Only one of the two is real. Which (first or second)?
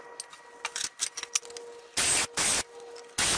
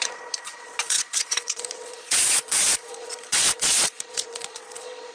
first